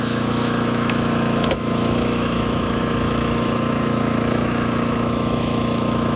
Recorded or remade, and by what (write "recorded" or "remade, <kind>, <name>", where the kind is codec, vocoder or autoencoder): remade, autoencoder, DAC-VAE